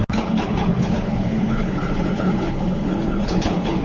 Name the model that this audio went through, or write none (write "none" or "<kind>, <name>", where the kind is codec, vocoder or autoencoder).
codec, HILCodec